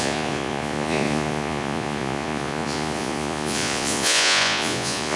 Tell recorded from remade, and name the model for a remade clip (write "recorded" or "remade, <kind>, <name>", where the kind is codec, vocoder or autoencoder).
remade, vocoder, Vocos